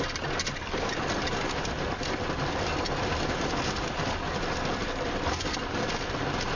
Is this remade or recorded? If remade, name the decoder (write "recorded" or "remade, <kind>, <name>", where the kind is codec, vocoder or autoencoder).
recorded